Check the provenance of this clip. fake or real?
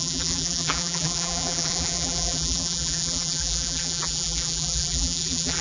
fake